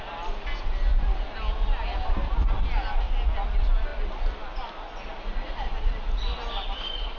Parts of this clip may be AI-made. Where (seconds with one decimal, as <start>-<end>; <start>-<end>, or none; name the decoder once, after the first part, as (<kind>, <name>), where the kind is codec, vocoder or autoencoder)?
none